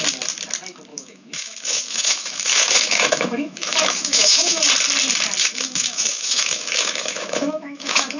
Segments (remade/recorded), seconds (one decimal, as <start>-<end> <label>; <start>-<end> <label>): 0.0-0.9 recorded; 0.9-4.6 remade; 4.6-5.4 recorded; 5.4-8.2 remade